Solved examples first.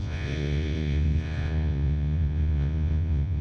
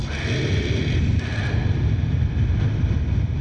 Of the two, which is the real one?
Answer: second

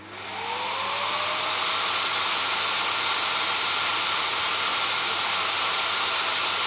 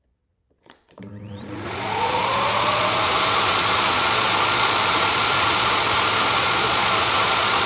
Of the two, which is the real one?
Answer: first